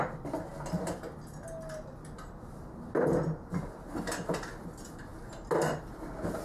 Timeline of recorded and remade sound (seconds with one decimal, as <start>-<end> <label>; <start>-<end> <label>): 0.0-0.5 remade; 0.5-4.3 recorded; 4.3-5.1 remade; 5.1-5.7 recorded; 5.7-6.4 remade